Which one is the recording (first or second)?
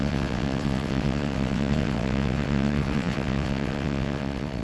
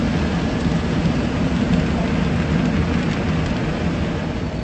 second